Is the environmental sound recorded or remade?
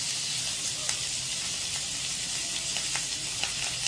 recorded